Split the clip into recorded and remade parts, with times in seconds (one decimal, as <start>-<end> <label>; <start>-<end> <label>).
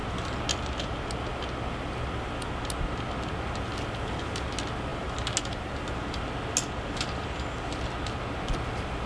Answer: 0.0-9.1 recorded